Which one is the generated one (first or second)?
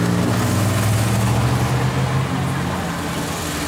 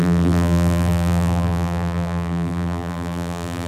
second